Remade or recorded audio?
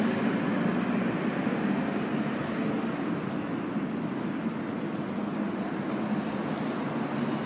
recorded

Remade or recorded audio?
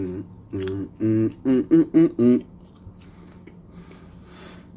recorded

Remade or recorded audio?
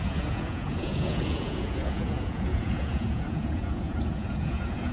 remade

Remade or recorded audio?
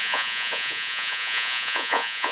remade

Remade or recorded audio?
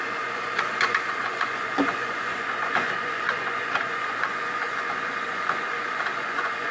remade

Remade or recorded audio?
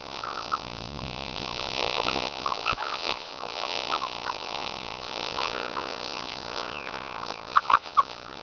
remade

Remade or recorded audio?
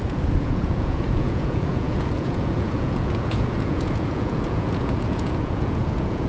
remade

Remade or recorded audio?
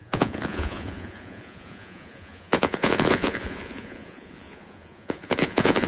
remade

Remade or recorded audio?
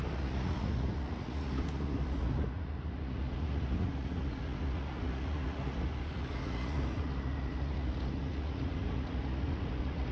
remade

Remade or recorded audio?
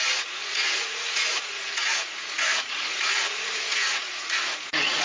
remade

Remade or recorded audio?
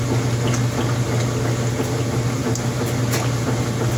recorded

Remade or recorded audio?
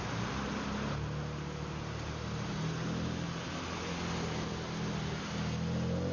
recorded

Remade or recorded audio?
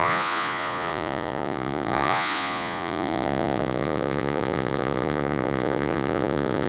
remade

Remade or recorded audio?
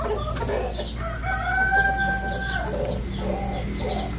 recorded